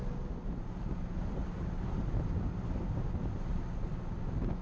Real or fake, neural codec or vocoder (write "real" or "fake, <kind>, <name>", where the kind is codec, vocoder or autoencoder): real